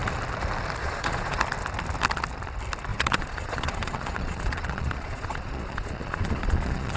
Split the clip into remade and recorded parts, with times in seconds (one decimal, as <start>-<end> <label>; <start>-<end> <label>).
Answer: 0.0-0.8 recorded; 0.8-1.4 remade; 1.4-2.9 recorded; 2.9-7.0 remade